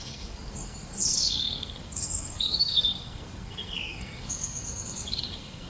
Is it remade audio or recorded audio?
remade